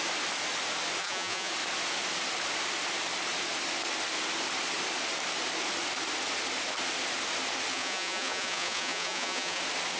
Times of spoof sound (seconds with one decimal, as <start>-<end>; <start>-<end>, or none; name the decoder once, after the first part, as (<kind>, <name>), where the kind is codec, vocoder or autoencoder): 1.0-1.5 (vocoder, Vocos); 7.7-9.6